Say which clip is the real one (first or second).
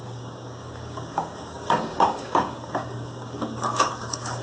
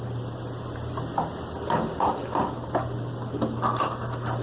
second